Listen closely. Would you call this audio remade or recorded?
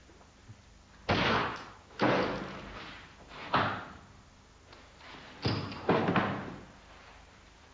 recorded